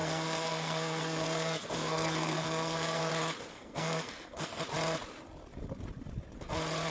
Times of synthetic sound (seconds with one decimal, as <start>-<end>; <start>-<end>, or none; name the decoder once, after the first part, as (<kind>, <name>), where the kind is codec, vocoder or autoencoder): 0.0-3.1 (codec, SNAC); 3.5-4.6